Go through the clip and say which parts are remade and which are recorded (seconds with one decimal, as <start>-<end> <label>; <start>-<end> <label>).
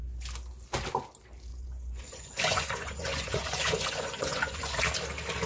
0.0-1.5 recorded; 1.5-4.8 remade; 4.8-5.5 recorded